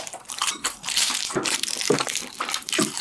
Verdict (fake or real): fake